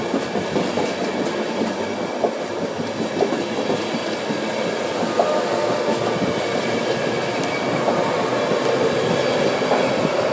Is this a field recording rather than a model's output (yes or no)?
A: yes